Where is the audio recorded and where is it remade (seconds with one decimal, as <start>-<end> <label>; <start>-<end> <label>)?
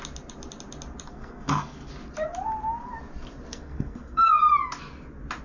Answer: 0.0-1.1 recorded; 1.1-1.9 remade; 1.9-3.5 recorded; 3.5-4.4 remade; 4.4-5.4 recorded